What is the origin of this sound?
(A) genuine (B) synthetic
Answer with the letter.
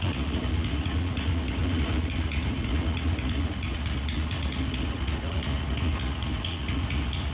B